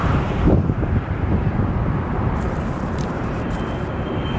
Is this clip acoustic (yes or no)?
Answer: no